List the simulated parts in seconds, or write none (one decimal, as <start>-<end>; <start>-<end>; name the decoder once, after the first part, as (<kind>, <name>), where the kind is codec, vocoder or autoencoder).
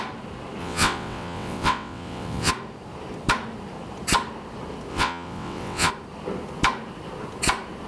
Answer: 0.6-2.5 (vocoder, WaveNeXt); 4.9-5.9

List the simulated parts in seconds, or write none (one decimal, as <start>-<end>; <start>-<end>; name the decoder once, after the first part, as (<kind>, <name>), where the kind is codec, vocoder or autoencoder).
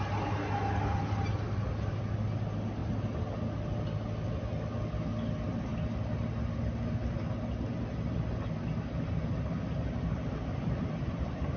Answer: none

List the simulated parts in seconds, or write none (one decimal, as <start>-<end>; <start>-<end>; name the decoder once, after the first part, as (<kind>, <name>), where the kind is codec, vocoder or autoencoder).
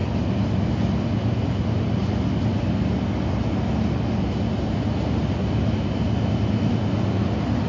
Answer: none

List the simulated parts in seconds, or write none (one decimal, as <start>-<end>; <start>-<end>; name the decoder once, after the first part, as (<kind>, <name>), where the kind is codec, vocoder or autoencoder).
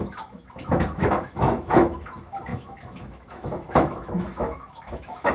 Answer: 0.0-5.3 (autoencoder, DAC-VAE)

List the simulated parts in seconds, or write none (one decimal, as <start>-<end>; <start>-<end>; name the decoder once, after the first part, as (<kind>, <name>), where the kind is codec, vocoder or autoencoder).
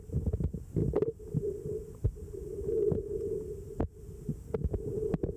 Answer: none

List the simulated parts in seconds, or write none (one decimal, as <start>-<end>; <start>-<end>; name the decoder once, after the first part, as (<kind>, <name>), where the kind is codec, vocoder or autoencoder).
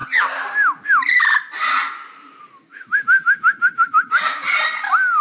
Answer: 0.0-1.9 (vocoder, BigVGAN v2); 2.7-3.9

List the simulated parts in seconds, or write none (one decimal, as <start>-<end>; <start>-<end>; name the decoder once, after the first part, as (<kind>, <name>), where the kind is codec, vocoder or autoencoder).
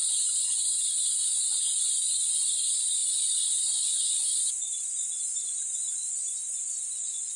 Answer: none